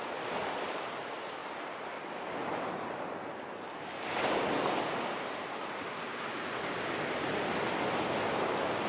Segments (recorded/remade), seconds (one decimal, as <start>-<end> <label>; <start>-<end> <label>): 0.0-1.4 remade; 1.4-5.3 recorded; 5.3-6.1 remade; 6.1-8.1 recorded; 8.1-8.9 remade